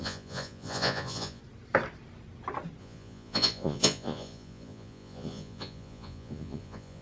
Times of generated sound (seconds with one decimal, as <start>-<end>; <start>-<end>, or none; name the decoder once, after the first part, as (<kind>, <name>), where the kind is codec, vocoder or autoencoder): 0.0-1.4 (vocoder, Vocos); 2.8-7.0